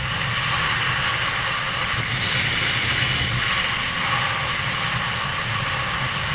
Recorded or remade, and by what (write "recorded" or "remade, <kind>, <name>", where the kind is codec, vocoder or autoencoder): recorded